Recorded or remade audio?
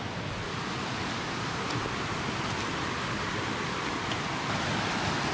recorded